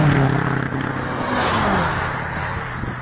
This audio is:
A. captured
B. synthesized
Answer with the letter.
A